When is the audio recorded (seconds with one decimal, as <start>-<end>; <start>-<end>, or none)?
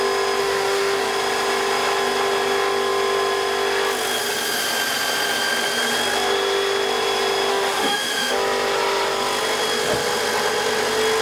0.0-0.4; 1.1-7.5; 8.4-11.2